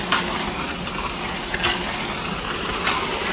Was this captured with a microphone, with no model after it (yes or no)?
yes